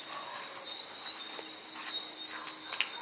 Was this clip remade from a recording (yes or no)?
no